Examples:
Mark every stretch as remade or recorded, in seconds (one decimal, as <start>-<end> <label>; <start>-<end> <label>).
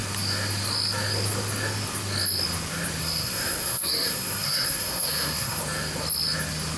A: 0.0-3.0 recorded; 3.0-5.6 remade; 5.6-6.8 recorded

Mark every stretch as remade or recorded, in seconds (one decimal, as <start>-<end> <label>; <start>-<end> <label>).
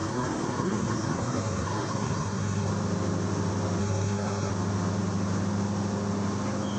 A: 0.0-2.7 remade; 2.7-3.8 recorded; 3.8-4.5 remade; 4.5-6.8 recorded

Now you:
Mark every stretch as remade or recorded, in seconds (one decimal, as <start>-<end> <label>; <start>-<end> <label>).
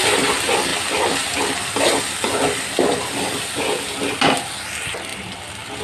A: 0.0-5.8 recorded